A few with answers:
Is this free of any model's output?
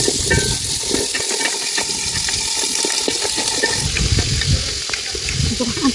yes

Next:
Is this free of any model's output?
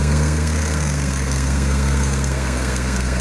no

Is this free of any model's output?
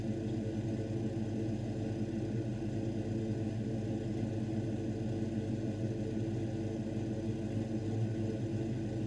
yes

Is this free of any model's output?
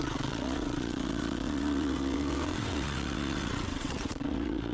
no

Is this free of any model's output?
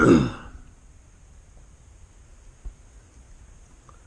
yes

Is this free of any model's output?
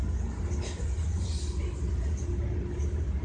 yes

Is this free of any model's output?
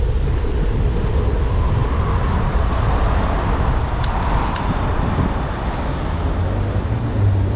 yes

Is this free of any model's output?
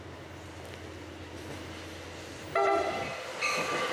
yes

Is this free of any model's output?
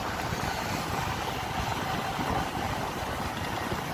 yes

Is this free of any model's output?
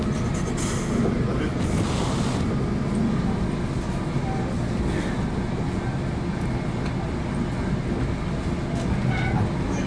yes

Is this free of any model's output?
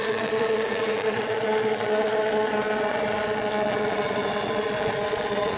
no